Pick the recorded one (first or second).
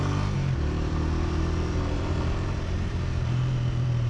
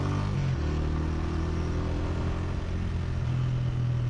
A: second